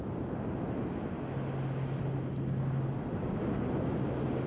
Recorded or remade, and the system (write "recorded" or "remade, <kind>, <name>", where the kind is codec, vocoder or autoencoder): recorded